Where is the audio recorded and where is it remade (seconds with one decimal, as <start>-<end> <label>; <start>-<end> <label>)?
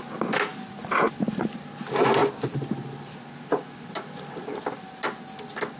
0.0-5.8 recorded